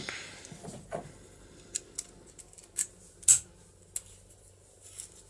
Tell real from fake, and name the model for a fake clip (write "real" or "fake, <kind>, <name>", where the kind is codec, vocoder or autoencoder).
real